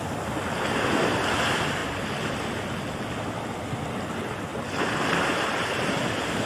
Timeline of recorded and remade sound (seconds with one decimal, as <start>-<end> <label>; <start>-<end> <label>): 0.0-6.5 recorded